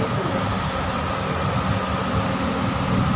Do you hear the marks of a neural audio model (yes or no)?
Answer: no